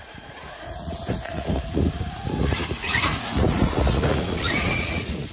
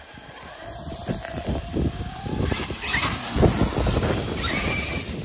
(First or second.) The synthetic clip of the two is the first